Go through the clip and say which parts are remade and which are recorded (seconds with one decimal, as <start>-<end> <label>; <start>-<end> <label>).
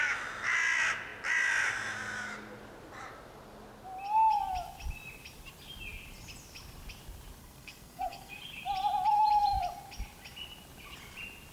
0.0-7.4 recorded; 7.4-8.4 remade; 8.4-11.5 recorded